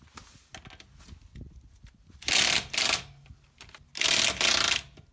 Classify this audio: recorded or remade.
recorded